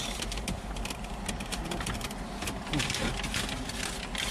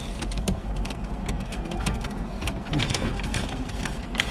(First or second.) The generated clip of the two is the second